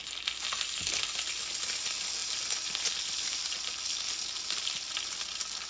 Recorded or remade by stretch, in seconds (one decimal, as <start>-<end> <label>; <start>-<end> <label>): 0.0-5.7 recorded